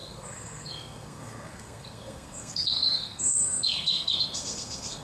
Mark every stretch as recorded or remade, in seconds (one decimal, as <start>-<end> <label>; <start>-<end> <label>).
0.0-5.0 remade